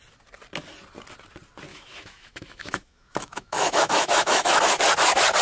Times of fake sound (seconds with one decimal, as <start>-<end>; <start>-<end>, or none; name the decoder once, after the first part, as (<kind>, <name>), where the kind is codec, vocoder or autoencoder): 1.7-4.6 (autoencoder, DAC-VAE)